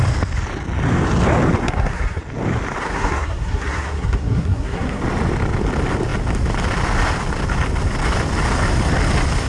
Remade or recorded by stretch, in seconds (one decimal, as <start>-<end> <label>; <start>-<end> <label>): 0.0-1.6 recorded; 1.6-2.2 remade; 2.2-2.8 recorded; 2.8-5.0 remade; 5.0-9.5 recorded